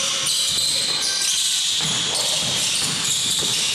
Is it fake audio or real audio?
fake